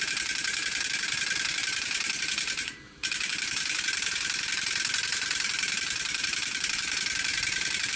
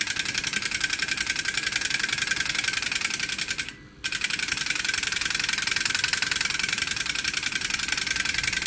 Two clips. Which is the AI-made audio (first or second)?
first